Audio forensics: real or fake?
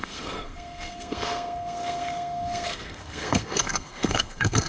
fake